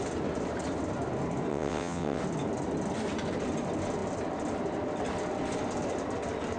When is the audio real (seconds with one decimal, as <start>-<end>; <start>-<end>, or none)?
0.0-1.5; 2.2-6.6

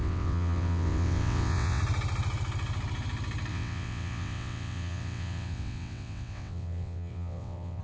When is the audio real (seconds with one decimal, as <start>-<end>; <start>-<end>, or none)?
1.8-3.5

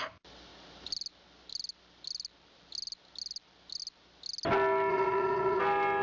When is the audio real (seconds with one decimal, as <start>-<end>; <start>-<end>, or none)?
0.0-4.9; 5.6-6.0